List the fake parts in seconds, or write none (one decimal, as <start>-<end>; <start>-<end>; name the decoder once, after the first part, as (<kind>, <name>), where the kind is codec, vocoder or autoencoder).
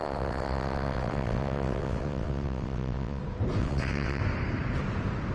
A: 0.0-3.2 (vocoder, WaveNeXt); 3.6-4.2